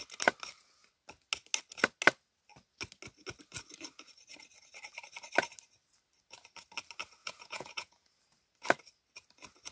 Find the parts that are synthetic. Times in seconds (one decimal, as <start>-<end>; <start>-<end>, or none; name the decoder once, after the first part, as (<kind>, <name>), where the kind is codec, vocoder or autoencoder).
7.2-8.1 (vocoder, Vocos)